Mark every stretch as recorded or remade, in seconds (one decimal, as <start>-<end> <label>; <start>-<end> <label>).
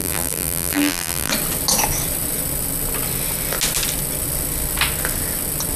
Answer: 0.0-1.3 remade; 1.3-5.8 recorded